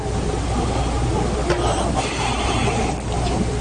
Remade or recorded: recorded